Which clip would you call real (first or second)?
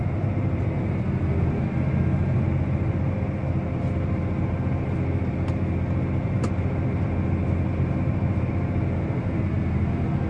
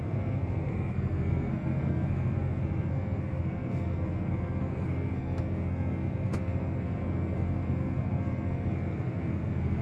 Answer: first